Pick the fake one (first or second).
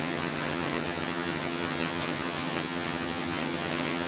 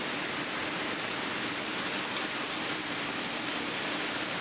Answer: first